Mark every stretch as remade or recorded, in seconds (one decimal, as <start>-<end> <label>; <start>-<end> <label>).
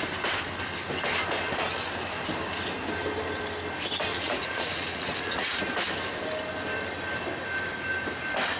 0.0-4.1 recorded; 4.1-5.6 remade; 5.6-8.6 recorded